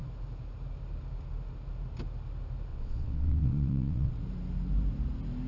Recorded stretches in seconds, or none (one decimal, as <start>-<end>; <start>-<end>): 0.0-2.7; 4.1-5.5